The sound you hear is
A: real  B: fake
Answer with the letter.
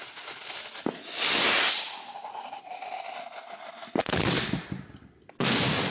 A